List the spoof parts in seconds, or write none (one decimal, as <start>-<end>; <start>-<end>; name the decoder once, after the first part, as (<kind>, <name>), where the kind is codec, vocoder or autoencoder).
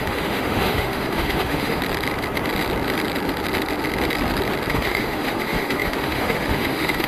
0.0-1.8 (autoencoder, DAC-VAE); 4.7-7.1